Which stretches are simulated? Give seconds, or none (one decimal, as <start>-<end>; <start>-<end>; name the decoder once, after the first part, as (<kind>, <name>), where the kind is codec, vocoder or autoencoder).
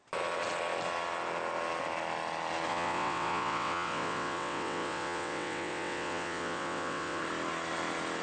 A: 2.7-7.2 (vocoder, WaveNeXt)